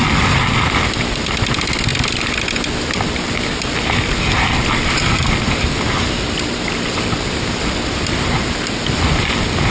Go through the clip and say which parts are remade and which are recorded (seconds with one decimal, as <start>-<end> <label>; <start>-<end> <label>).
0.0-9.7 recorded